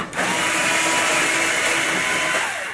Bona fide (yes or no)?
yes